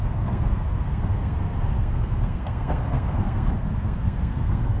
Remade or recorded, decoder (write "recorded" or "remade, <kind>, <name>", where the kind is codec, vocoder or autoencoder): remade, codec, SNAC